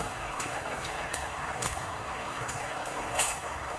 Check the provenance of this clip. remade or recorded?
remade